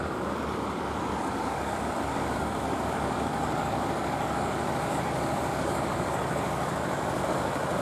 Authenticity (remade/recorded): remade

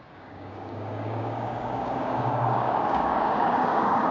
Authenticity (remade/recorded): remade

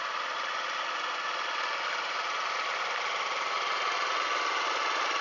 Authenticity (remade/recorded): recorded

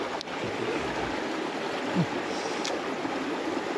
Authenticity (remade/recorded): recorded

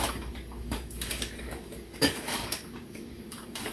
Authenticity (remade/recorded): remade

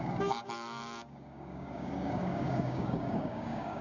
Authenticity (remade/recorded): remade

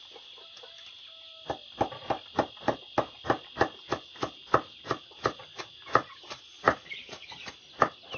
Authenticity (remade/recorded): recorded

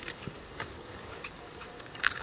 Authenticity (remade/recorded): remade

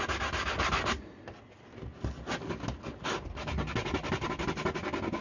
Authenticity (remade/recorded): recorded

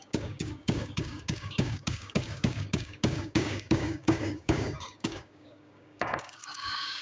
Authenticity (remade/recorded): remade